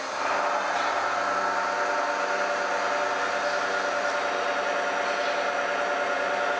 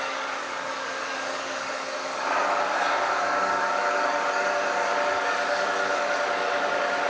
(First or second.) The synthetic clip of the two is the second